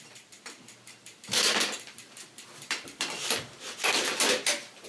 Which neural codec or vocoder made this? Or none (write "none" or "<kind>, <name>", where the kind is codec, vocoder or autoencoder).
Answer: vocoder, BigVGAN v2